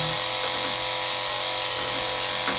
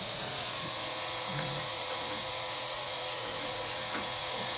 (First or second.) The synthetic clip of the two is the second